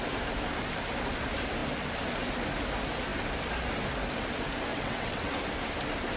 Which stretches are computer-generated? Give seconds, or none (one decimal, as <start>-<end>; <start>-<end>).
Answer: 4.7-5.4